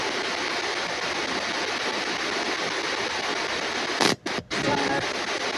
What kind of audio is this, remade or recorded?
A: recorded